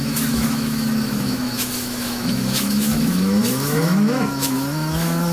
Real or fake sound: fake